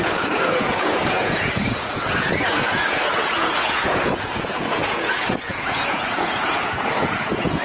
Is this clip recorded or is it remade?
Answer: remade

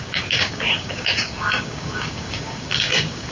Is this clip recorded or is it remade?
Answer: remade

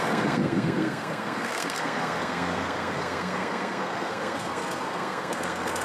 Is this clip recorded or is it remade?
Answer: remade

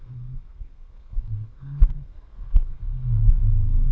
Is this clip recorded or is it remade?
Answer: remade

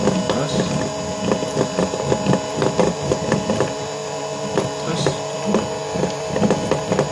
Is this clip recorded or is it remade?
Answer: recorded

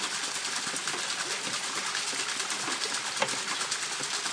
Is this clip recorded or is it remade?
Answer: recorded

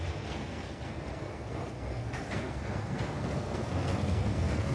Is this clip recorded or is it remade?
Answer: remade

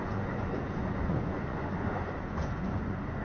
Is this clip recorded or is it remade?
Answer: remade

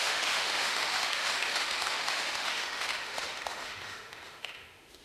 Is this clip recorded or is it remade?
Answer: remade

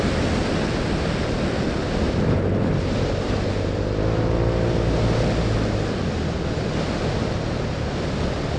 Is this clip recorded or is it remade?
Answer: recorded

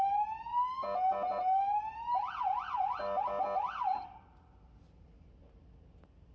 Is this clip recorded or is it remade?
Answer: recorded